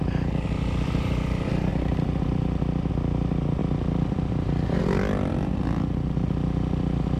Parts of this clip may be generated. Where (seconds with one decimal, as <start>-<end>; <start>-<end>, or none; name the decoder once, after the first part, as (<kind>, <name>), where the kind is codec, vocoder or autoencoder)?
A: 1.7-2.9 (vocoder, BigVGAN v2); 3.6-5.3